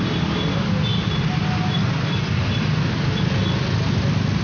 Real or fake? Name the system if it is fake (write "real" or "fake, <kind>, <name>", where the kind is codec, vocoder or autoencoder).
real